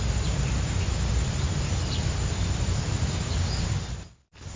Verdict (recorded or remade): recorded